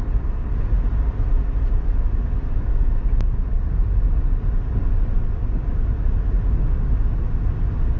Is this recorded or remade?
recorded